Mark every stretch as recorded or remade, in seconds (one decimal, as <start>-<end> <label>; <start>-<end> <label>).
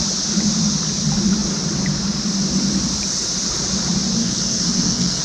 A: 0.0-4.2 recorded; 4.2-5.2 remade